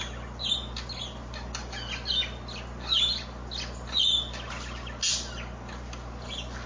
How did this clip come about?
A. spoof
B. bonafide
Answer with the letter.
B